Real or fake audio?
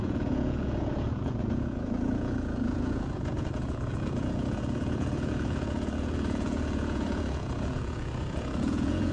fake